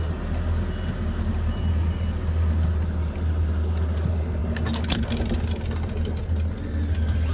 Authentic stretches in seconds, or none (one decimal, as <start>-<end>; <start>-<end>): 0.0-7.3